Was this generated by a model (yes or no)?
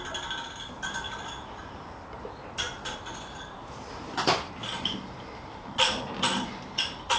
no